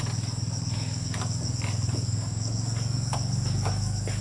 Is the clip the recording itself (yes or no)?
no